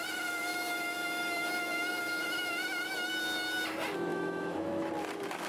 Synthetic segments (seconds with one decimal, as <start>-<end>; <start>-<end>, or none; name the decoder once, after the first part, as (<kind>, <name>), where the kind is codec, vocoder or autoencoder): 0.5-3.1 (autoencoder, DAC-VAE); 4.1-4.9